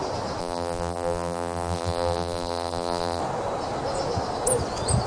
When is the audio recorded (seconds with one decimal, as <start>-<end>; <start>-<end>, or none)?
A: 0.0-0.4; 3.2-5.1